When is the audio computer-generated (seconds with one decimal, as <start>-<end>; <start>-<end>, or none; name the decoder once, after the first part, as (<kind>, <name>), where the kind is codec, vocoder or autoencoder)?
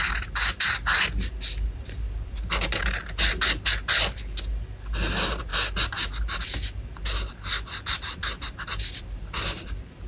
none